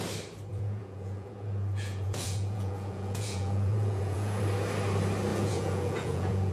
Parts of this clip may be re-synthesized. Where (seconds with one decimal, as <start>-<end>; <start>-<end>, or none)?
0.5-4.4; 5.3-6.5